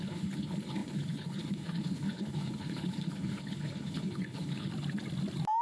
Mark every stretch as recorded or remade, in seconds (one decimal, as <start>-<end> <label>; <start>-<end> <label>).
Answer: 0.0-4.7 remade; 4.7-5.6 recorded